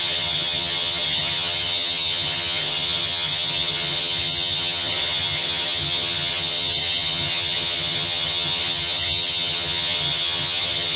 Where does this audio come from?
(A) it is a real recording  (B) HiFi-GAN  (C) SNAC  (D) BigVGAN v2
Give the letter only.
B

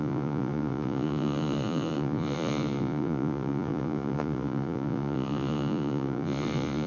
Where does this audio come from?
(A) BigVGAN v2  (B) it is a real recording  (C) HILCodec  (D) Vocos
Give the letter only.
D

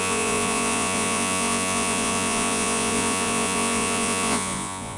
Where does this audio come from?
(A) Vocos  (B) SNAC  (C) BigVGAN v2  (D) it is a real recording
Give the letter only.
A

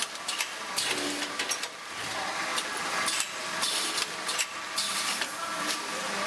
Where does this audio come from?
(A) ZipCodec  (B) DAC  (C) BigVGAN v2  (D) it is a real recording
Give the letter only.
D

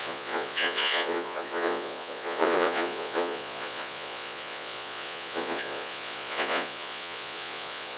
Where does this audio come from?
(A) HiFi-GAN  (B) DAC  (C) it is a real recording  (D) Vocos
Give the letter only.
D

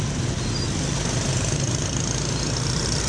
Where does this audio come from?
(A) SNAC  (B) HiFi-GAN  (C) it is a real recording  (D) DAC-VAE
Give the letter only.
C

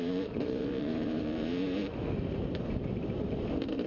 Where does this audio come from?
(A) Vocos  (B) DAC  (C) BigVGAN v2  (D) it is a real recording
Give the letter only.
C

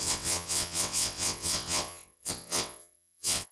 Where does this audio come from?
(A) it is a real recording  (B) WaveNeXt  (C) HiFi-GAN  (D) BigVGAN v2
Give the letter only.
B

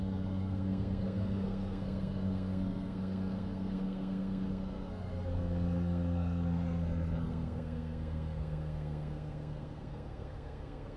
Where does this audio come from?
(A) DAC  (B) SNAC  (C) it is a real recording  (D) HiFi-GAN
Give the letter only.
B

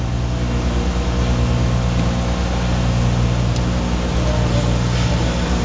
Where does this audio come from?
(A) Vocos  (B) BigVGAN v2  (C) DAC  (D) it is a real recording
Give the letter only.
D